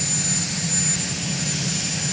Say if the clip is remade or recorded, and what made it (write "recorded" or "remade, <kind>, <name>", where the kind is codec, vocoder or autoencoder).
recorded